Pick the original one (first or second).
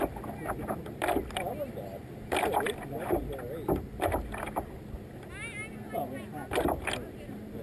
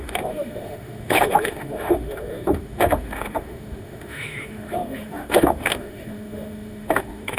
first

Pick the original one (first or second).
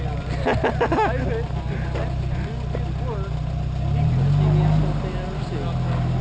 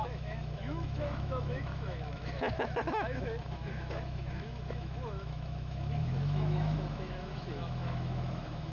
first